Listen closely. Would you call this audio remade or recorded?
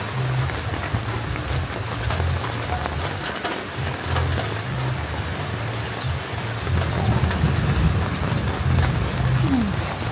recorded